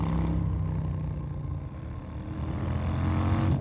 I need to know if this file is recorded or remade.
recorded